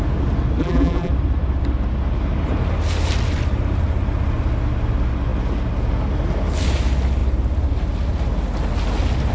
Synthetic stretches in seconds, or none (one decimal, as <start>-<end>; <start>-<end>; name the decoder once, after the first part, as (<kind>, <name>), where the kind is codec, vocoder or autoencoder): 0.6-1.1 (vocoder, BigVGAN v2)